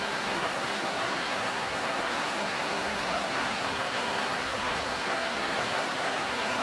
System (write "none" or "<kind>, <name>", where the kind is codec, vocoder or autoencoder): codec, SNAC